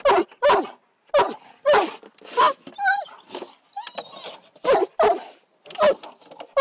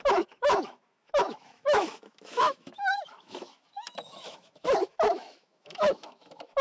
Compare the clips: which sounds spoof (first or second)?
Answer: second